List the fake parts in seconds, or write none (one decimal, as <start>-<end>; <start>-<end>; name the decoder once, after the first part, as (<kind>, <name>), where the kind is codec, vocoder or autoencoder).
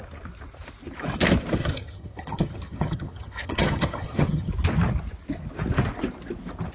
1.6-4.5 (vocoder, HiFi-GAN)